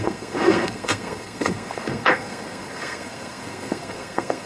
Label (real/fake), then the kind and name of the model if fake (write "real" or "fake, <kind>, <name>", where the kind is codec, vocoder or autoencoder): fake, codec, SNAC